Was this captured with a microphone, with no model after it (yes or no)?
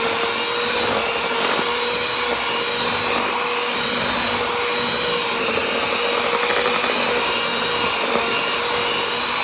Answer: yes